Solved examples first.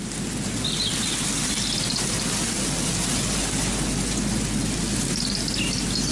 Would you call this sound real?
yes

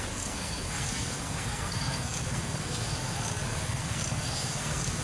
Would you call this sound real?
no